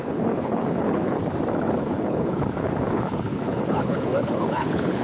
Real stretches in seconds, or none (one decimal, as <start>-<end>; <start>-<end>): 1.2-1.8